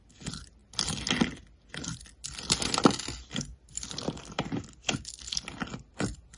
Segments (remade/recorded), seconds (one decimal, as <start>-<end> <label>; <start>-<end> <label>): 0.0-6.4 recorded